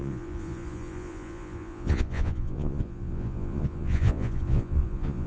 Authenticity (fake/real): fake